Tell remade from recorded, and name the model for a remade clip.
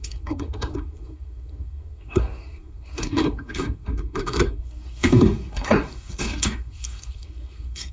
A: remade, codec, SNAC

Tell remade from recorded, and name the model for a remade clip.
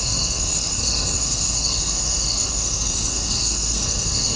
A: remade, codec, SNAC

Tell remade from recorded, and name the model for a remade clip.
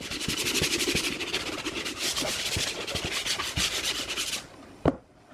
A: recorded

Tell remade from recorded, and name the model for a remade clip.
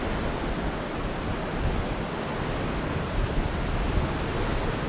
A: recorded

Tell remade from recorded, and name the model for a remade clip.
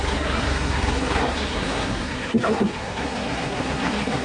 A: remade, codec, SNAC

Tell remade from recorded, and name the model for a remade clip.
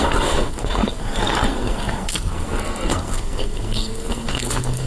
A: remade, codec, SNAC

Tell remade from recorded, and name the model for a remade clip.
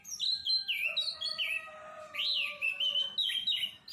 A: recorded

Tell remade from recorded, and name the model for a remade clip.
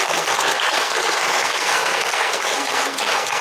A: remade, codec, SNAC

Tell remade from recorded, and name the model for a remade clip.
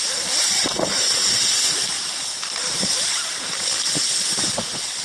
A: recorded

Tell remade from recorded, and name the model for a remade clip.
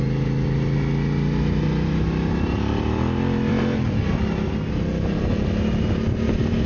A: recorded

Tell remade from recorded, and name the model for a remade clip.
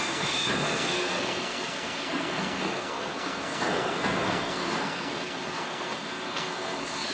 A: remade, codec, SNAC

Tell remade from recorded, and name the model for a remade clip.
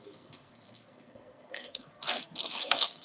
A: remade, codec, SNAC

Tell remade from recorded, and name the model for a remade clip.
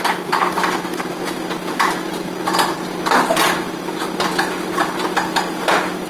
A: recorded